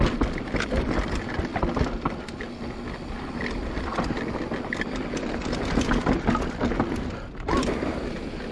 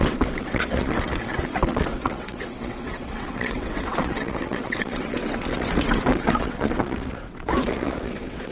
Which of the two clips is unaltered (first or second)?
first